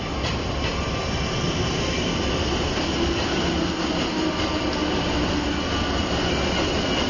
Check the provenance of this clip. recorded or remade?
recorded